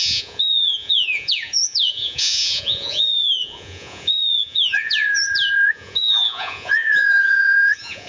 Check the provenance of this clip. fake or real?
fake